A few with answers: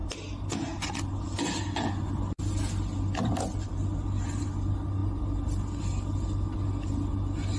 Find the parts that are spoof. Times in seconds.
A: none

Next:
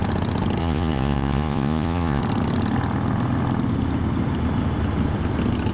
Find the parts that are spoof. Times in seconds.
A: 0.6-2.2 (vocoder, Vocos)

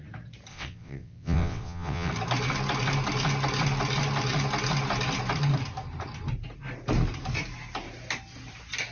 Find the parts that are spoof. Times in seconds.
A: 0.5-2.1 (vocoder, WaveNeXt)

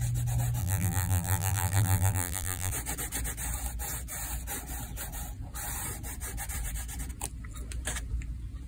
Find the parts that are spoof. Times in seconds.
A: 0.6-2.7 (vocoder, BigVGAN v2)

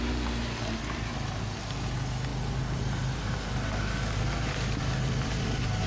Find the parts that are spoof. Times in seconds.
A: none

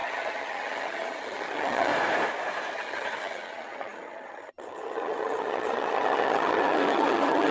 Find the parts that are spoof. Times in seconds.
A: 0.0-1.9 (vocoder, HiFi-GAN); 2.7-7.5